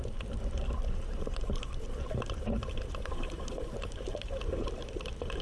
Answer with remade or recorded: remade